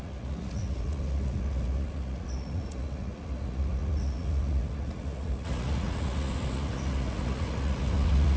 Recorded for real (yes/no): no